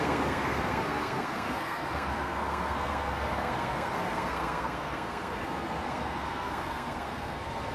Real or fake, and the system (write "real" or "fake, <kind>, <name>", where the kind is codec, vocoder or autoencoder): fake, codec, SNAC